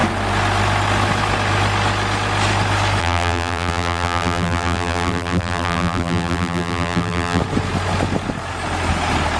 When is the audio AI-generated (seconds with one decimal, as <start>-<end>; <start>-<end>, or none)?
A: 3.0-7.4